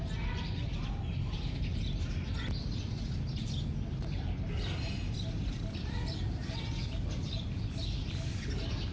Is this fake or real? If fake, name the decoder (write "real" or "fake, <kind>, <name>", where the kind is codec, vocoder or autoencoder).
real